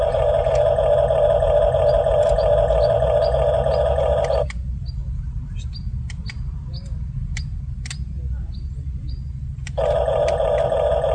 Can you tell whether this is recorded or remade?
recorded